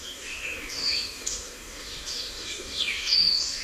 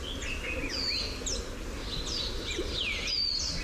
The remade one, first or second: first